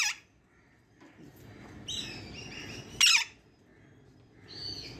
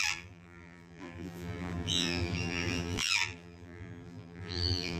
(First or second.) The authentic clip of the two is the first